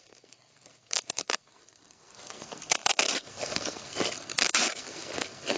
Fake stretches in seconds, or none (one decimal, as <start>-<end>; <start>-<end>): 0.0-5.6